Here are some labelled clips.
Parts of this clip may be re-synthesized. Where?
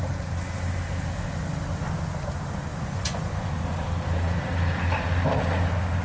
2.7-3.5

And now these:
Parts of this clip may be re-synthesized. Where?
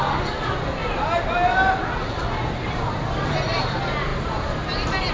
none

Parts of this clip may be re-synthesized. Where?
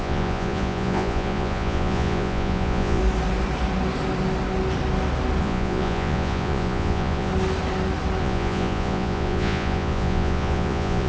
0.0-3.0; 5.4-7.3; 8.2-11.1